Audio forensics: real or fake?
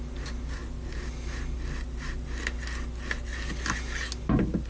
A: real